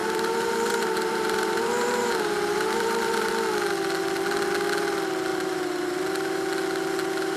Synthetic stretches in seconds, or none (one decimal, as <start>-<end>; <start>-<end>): 0.0-3.3; 5.3-6.0